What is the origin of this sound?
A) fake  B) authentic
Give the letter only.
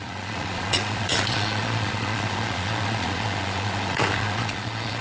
A